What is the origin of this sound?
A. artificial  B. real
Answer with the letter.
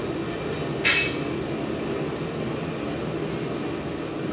B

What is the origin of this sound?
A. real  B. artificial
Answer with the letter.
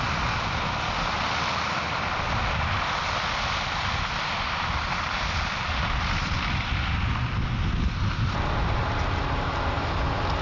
A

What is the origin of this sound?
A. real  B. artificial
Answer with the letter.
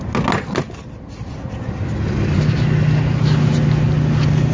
A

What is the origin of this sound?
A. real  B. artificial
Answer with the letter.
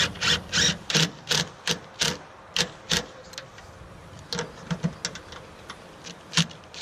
A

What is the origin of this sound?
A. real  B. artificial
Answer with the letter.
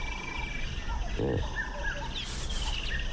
A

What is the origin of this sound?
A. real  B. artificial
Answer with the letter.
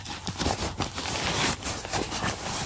A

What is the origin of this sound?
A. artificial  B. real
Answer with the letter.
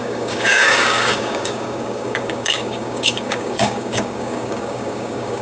A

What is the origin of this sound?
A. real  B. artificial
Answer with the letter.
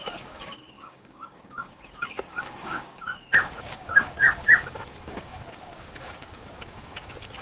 B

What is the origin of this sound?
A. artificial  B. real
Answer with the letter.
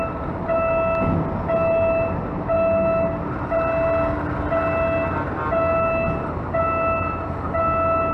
B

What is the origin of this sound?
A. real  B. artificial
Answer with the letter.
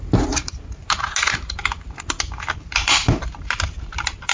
A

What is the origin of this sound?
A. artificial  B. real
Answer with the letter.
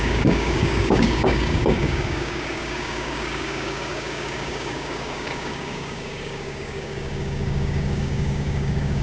A